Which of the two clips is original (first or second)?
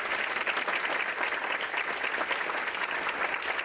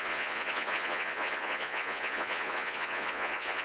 first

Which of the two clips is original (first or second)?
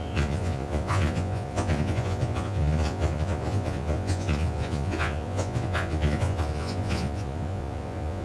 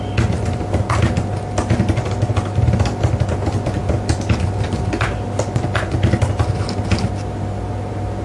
second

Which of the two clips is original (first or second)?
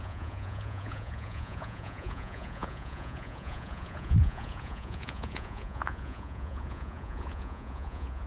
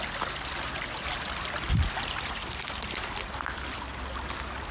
second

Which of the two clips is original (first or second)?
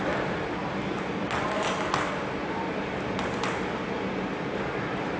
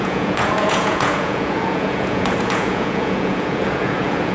first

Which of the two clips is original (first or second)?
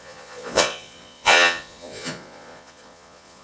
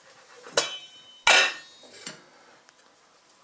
second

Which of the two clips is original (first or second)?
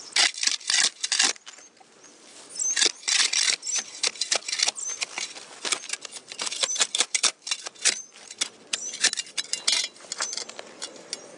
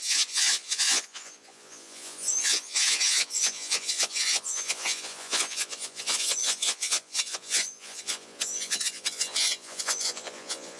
first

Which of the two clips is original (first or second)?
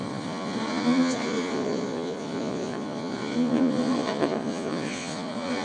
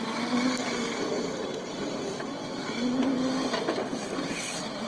second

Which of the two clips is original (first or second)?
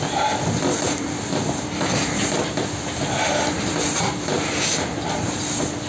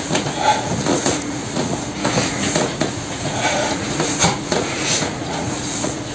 first